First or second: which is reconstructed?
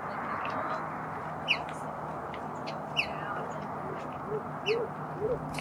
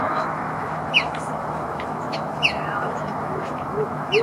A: second